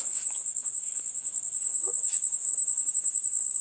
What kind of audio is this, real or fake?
fake